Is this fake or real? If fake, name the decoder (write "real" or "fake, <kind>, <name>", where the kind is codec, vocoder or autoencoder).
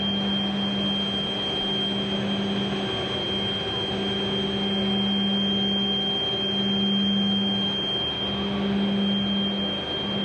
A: real